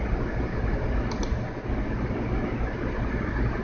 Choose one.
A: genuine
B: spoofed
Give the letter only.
A